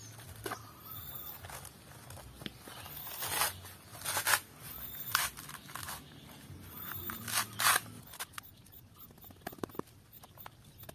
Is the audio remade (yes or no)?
no